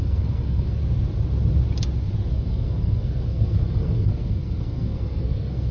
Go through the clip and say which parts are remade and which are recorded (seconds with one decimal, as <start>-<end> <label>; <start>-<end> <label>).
0.0-0.8 remade; 0.8-2.3 recorded; 2.3-5.7 remade